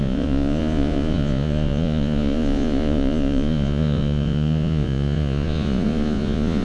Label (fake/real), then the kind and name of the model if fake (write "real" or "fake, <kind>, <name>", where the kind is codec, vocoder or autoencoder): fake, vocoder, Vocos